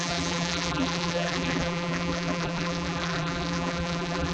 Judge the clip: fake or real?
fake